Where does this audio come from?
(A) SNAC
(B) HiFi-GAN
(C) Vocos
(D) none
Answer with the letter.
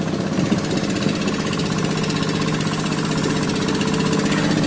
D